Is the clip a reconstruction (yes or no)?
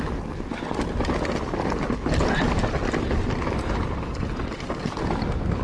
no